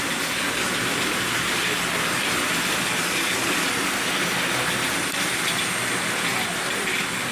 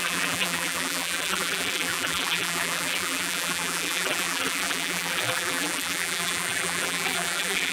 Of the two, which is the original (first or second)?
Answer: first